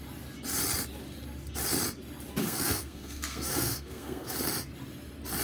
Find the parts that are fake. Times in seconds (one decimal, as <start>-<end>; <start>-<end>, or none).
2.4-4.4